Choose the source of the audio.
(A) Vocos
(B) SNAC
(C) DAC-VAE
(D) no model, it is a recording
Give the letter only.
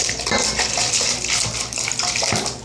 D